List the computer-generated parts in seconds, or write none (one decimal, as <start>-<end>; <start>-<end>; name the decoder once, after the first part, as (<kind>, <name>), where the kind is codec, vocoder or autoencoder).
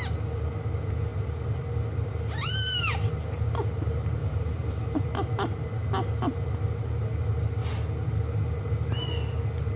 4.2-5.1 (vocoder, BigVGAN v2)